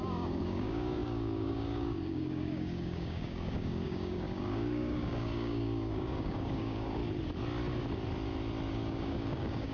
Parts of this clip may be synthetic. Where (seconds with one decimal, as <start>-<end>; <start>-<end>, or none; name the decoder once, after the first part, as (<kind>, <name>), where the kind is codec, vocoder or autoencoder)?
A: 0.0-7.0 (codec, DAC); 8.7-9.7